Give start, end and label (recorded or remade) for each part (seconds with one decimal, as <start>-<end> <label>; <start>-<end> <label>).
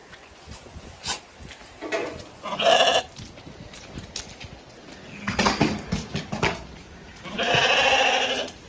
0.0-1.2 remade; 1.2-2.0 recorded; 2.0-2.7 remade; 2.7-8.7 recorded